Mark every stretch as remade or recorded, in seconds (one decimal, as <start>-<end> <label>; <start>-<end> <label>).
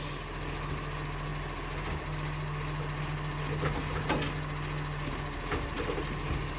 0.0-6.6 recorded